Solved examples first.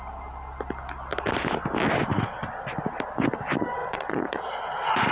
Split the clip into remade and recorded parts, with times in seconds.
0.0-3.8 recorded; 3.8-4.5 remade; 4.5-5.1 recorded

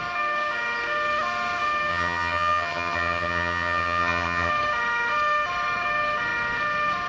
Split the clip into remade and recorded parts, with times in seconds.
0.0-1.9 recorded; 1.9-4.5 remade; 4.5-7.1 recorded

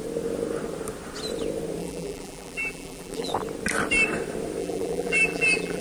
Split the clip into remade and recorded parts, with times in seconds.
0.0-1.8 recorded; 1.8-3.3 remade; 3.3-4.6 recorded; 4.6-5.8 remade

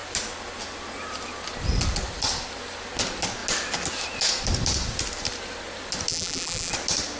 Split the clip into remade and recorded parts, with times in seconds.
0.0-6.1 recorded; 6.1-6.7 remade; 6.7-7.2 recorded

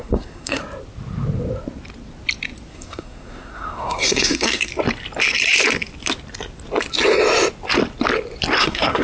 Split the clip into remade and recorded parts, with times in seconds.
0.0-0.6 remade; 0.6-2.7 recorded; 2.7-4.7 remade; 4.7-8.6 recorded; 8.6-9.0 remade